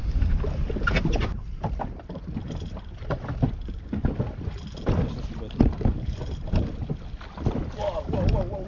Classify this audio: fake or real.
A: real